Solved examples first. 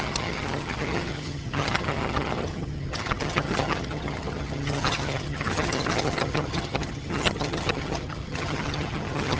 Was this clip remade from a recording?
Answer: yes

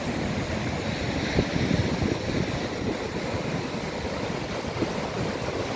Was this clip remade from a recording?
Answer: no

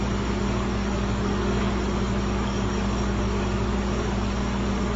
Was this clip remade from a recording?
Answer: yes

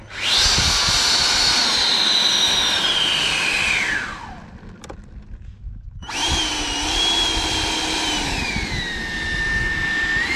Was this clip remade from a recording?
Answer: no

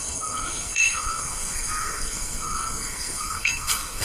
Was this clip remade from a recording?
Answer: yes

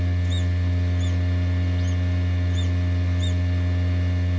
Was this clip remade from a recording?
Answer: no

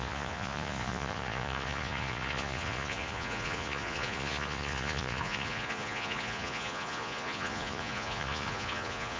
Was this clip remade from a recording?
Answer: yes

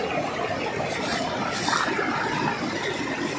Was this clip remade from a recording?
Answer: no